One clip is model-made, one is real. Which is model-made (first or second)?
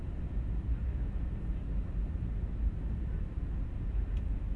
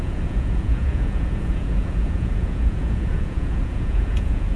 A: second